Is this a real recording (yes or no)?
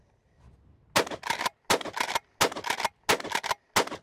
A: yes